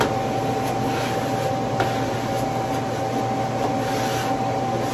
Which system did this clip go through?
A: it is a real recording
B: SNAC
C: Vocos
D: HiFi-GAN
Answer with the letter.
A